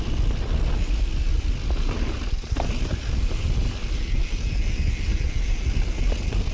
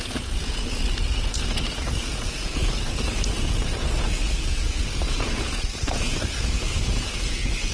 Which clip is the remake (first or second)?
second